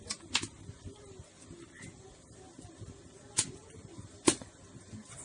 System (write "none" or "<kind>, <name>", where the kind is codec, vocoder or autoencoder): none